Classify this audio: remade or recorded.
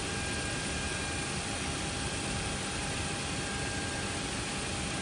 recorded